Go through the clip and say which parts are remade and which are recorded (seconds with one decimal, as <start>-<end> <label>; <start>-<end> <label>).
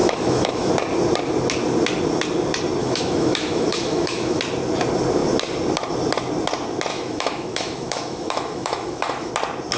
0.0-0.7 remade; 0.7-2.8 recorded; 2.8-4.4 remade; 4.4-6.9 recorded; 6.9-9.3 remade; 9.3-9.8 recorded